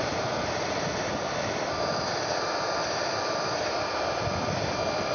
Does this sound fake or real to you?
fake